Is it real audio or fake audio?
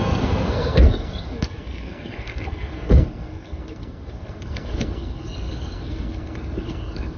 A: fake